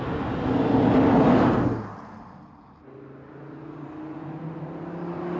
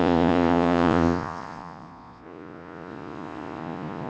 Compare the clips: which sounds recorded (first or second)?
first